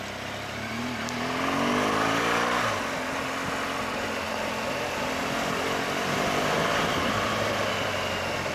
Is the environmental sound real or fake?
real